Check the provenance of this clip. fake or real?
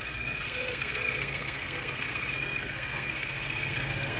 fake